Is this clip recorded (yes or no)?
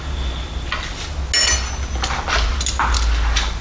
yes